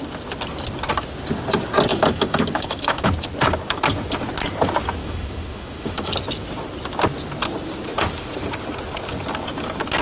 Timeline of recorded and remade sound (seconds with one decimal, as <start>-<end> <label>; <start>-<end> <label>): 0.0-1.9 recorded; 1.9-3.1 remade; 3.1-5.0 recorded; 5.0-6.1 remade; 6.1-10.0 recorded